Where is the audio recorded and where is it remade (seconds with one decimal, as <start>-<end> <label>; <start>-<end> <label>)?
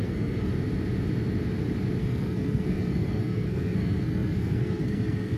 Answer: 0.0-0.5 remade; 0.5-2.0 recorded; 2.0-5.4 remade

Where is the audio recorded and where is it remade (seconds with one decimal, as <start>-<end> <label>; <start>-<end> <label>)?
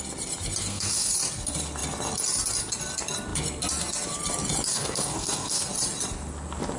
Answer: 0.0-0.6 recorded; 0.6-1.1 remade; 1.1-4.7 recorded; 4.7-5.7 remade; 5.7-6.8 recorded